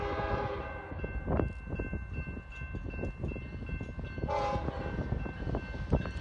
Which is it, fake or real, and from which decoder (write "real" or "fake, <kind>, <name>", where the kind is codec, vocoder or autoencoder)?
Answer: real